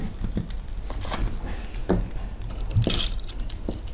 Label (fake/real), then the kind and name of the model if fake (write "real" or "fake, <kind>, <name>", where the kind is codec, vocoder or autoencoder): real